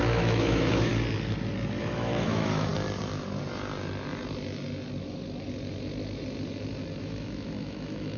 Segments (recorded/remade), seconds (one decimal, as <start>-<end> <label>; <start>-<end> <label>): 0.0-0.9 remade; 0.9-1.8 recorded; 1.8-2.7 remade; 2.7-7.0 recorded; 7.0-8.2 remade